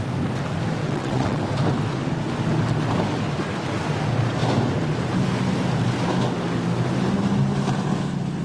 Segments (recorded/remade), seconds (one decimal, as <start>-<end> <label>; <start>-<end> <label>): 0.0-0.8 recorded; 0.8-1.4 remade; 1.4-8.4 recorded